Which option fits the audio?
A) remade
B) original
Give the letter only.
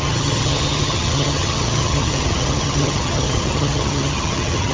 A